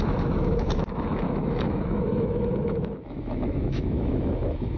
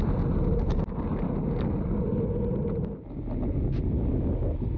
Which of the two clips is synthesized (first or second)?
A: first